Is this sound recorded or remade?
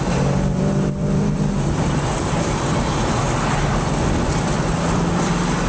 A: remade